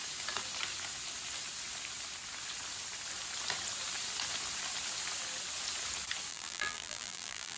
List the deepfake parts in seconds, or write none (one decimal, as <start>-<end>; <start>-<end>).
6.3-7.6